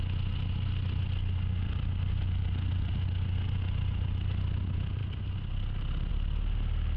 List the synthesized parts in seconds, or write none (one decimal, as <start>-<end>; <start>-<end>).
none